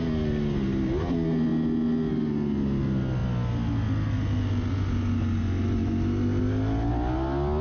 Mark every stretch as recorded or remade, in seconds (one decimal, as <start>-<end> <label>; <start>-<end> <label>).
0.0-7.6 recorded